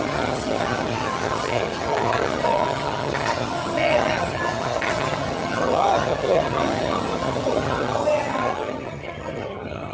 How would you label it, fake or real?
fake